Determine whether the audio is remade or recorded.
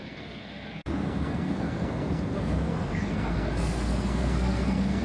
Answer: remade